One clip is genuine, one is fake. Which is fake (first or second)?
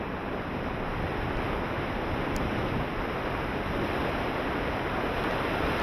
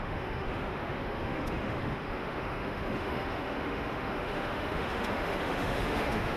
second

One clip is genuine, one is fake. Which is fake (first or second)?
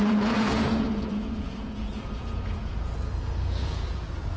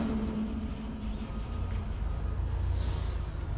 first